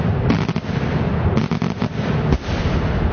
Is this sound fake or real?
real